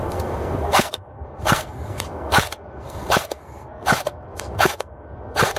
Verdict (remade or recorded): remade